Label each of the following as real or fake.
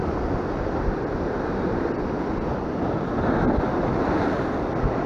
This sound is real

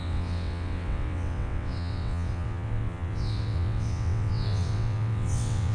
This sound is fake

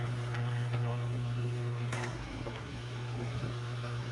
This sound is fake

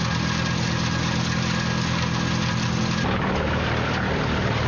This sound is real